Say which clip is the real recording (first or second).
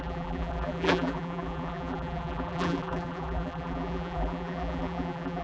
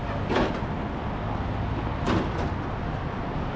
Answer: second